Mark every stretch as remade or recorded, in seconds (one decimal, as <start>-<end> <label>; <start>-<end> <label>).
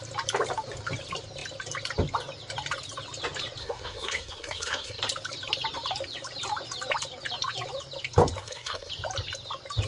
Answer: 0.0-3.6 recorded; 3.6-5.0 remade; 5.0-8.4 recorded; 8.4-8.9 remade; 8.9-9.9 recorded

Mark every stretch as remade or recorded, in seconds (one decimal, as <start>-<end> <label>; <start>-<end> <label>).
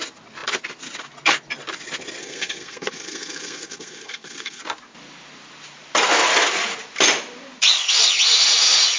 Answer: 0.0-2.2 recorded; 2.2-4.6 remade; 4.6-9.0 recorded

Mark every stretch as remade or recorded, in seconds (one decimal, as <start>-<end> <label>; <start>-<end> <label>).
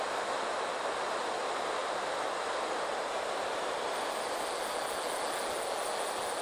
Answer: 0.0-6.4 recorded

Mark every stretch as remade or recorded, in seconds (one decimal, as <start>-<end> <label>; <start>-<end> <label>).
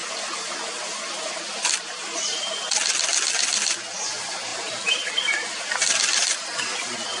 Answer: 0.0-7.2 recorded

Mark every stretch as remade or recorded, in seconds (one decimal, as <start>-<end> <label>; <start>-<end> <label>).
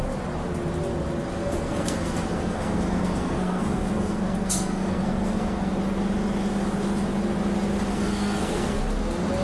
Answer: 0.0-1.4 recorded; 1.4-5.7 remade; 5.7-7.9 recorded; 7.9-8.8 remade; 8.8-9.4 recorded